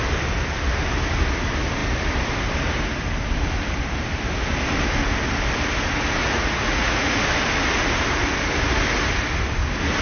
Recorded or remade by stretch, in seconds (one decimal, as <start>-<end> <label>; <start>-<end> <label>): 0.0-6.2 recorded; 6.2-7.2 remade; 7.2-10.0 recorded